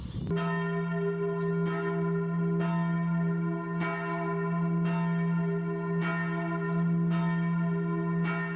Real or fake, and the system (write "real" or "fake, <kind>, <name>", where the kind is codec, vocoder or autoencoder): real